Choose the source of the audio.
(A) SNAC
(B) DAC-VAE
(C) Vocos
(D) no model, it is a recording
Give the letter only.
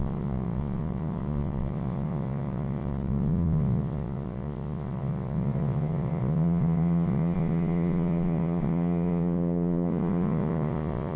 C